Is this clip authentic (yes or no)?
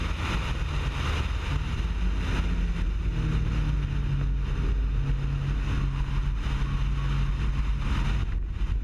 yes